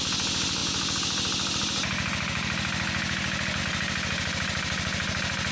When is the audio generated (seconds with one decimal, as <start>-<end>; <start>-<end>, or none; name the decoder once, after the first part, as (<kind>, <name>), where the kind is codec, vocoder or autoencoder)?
none